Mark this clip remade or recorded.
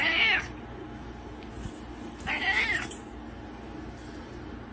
recorded